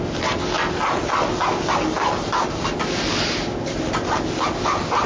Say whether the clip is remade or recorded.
recorded